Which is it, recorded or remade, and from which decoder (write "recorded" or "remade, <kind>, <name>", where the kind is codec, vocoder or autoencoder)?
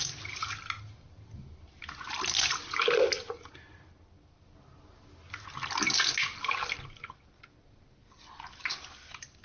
recorded